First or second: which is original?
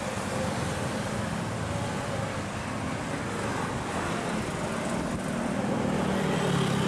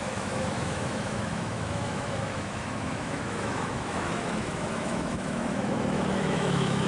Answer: first